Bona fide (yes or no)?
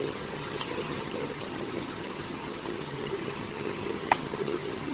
no